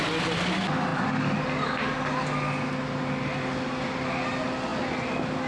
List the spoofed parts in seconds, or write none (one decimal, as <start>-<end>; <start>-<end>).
none